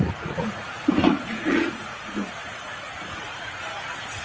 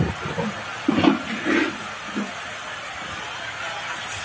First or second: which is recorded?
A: second